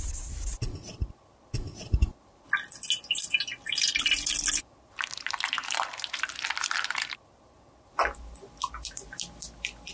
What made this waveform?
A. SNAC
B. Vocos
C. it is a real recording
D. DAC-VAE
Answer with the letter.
C